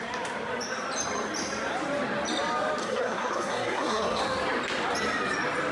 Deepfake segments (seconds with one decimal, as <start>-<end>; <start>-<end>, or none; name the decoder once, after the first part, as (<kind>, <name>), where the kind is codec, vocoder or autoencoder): 2.8-4.2 (codec, SNAC)